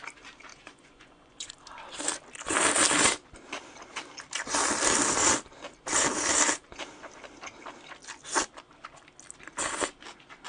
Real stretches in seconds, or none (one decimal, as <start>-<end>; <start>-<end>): 0.0-0.5; 1.5-10.5